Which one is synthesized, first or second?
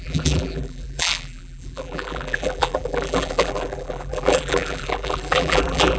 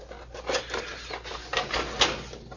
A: first